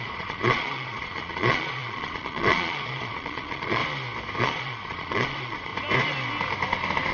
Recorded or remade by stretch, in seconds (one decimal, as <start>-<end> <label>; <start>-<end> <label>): 0.0-3.8 remade; 3.8-4.4 recorded; 4.4-5.7 remade; 5.7-7.1 recorded